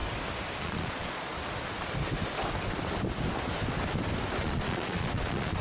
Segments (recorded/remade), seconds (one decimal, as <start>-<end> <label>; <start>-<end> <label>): 0.0-0.6 recorded; 0.6-1.3 remade; 1.3-4.4 recorded; 4.4-5.6 remade